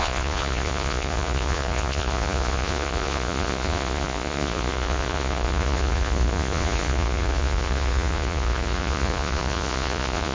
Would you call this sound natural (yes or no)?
no